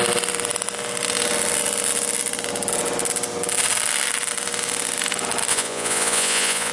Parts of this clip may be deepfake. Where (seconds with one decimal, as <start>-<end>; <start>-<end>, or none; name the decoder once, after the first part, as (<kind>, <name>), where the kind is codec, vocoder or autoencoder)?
5.5-6.7 (vocoder, Vocos)